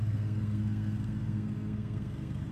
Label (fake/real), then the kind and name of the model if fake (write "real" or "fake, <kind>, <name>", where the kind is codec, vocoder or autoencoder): fake, codec, SNAC